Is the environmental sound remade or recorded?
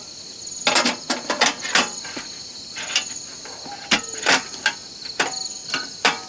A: recorded